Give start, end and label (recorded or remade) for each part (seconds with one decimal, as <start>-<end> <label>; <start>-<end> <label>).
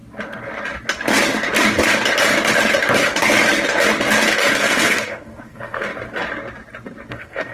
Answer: 0.0-4.5 recorded; 4.5-5.9 remade; 5.9-7.1 recorded; 7.1-7.5 remade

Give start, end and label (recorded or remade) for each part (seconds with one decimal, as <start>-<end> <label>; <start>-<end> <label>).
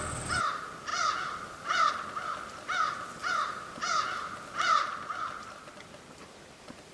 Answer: 0.0-0.9 recorded; 0.9-1.9 remade; 1.9-6.9 recorded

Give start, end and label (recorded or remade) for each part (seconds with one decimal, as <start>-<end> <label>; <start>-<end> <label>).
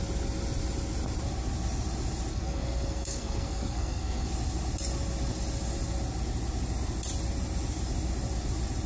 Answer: 0.0-2.3 recorded; 2.3-4.3 remade; 4.3-8.9 recorded